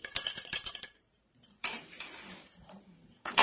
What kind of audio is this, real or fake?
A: fake